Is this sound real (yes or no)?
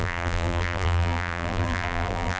no